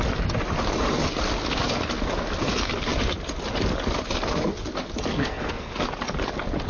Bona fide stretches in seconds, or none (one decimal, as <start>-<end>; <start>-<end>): 0.0-5.1; 5.8-6.7